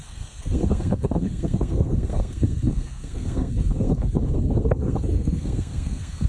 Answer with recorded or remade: remade